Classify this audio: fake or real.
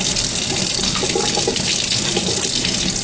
real